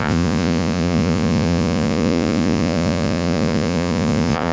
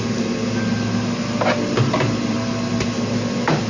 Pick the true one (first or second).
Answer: second